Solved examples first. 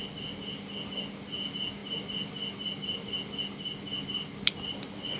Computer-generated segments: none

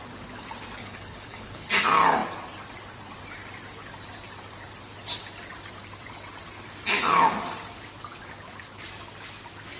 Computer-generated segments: 0.8-1.7 (codec, HILCodec)

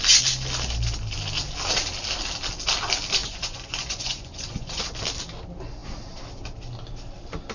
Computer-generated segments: 3.2-4.8 (vocoder, Vocos)

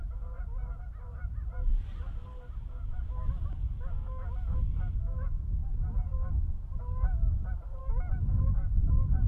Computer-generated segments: none

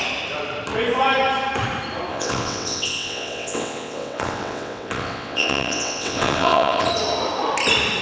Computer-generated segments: 2.1-6.9 (vocoder, WaveNeXt)

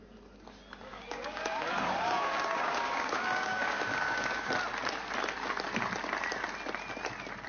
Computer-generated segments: 0.9-4.5 (codec, DAC)

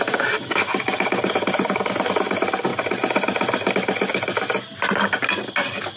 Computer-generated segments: none